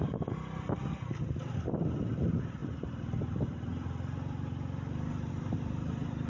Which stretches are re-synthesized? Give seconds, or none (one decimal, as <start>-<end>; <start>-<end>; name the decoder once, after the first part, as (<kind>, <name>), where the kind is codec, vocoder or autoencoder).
none